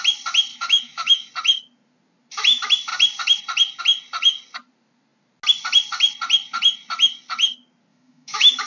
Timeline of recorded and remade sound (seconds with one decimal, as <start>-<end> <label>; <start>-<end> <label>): 0.0-0.5 recorded; 0.5-1.3 remade; 1.3-7.9 recorded; 7.9-8.7 remade